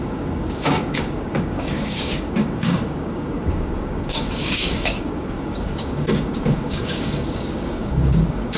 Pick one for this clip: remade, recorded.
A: remade